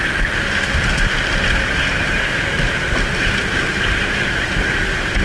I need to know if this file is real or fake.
real